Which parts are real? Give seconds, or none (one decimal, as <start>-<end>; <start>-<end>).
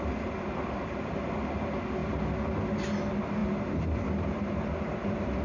0.0-5.4